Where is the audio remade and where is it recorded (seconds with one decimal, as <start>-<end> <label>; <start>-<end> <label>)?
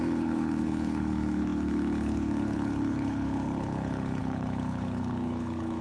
0.0-5.8 remade